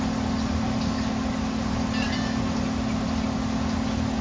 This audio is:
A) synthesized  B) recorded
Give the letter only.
B